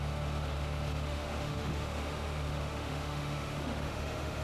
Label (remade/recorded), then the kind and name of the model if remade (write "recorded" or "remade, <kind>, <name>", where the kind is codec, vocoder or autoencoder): remade, autoencoder, DAC-VAE